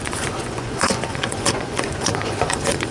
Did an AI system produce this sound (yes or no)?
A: yes